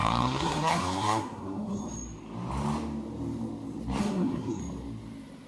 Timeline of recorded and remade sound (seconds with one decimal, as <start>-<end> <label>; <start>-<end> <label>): 0.0-1.8 remade; 1.8-4.0 recorded; 4.0-4.6 remade; 4.6-5.5 recorded

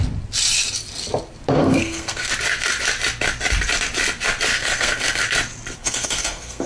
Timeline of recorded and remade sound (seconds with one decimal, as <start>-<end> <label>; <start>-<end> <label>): 0.0-1.6 recorded; 1.6-2.3 remade; 2.3-4.5 recorded; 4.5-5.2 remade; 5.2-5.8 recorded; 5.8-6.7 remade

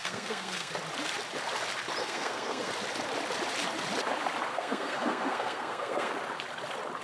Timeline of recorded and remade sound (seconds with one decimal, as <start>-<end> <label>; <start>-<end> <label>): 0.0-0.7 remade; 0.7-2.0 recorded; 2.0-2.7 remade; 2.7-4.5 recorded; 4.5-6.1 remade; 6.1-7.0 recorded

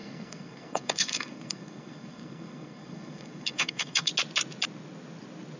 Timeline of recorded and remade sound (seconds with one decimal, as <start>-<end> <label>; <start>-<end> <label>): 0.0-4.1 remade; 4.1-5.6 recorded

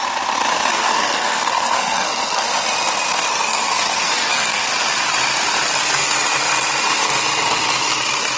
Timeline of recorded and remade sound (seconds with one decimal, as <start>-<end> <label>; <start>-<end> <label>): 0.0-0.7 recorded; 0.7-2.4 remade; 2.4-3.3 recorded; 3.3-4.7 remade; 4.7-8.4 recorded

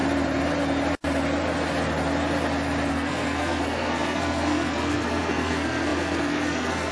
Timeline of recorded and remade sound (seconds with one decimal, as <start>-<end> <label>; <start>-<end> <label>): 0.0-2.9 recorded; 2.9-6.9 remade

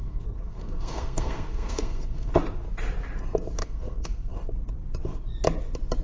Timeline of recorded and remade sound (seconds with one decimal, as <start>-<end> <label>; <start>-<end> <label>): 0.0-2.3 remade; 2.3-3.6 recorded; 3.6-4.3 remade; 4.3-6.0 recorded